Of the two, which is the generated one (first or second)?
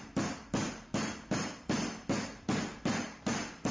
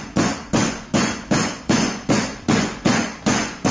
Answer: second